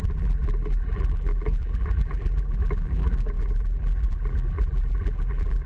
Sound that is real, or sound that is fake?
fake